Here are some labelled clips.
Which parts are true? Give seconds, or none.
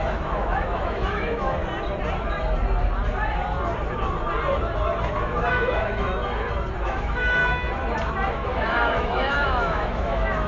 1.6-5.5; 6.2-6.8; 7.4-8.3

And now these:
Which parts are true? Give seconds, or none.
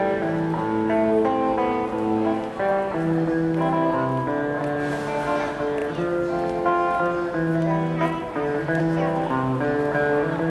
0.0-10.5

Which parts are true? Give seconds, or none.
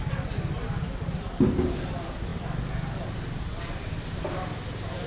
0.0-5.1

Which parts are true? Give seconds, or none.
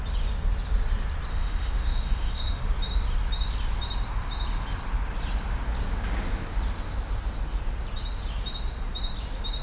0.0-1.3; 2.6-9.6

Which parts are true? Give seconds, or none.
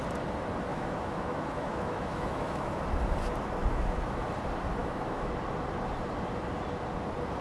0.0-0.7; 2.8-3.6; 4.2-4.8; 5.3-7.4